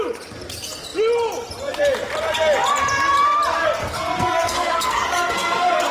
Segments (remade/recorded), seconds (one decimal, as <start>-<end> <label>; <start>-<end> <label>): 0.0-3.5 recorded; 3.5-5.9 remade